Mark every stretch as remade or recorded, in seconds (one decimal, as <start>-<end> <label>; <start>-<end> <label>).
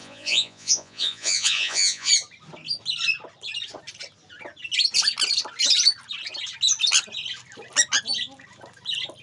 0.0-2.1 remade; 2.1-9.2 recorded